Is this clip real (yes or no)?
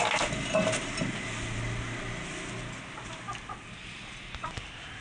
yes